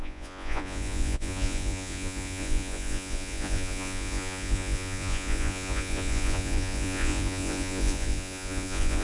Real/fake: fake